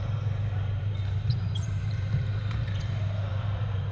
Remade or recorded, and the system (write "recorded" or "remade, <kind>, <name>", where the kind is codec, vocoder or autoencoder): remade, vocoder, BigVGAN v2